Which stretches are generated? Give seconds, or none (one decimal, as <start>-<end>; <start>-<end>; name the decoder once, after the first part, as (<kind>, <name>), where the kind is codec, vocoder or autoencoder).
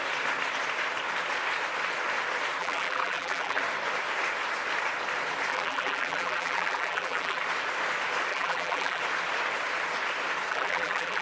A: 2.6-3.6 (vocoder, BigVGAN v2); 5.5-7.4; 8.3-9.0; 10.5-11.2